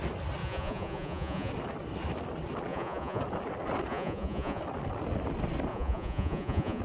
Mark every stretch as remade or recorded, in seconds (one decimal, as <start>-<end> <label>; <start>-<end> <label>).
0.0-0.4 recorded; 0.4-1.5 remade; 1.5-2.7 recorded; 2.7-3.2 remade; 3.2-3.9 recorded; 3.9-4.6 remade; 4.6-5.7 recorded; 5.7-6.8 remade